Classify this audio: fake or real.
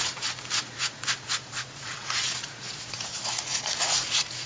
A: fake